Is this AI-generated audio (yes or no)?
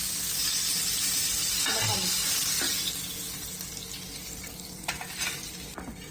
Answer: no